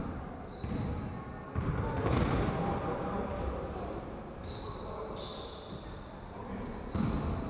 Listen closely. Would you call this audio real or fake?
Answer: real